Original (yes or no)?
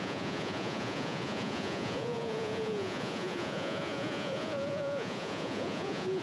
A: no